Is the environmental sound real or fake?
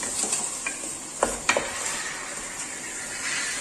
real